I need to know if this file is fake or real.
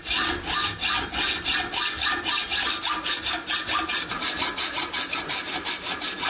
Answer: real